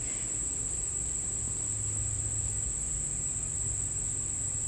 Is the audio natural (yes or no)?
yes